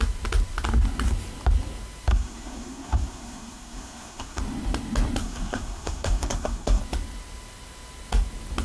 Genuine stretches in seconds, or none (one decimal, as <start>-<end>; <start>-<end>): 0.0-2.1; 4.4-5.2; 6.8-8.6